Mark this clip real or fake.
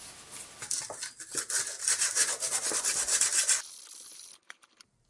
real